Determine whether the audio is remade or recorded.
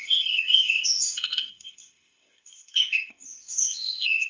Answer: remade